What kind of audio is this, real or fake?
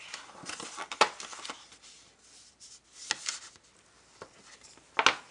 real